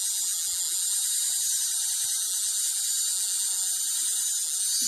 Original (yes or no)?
yes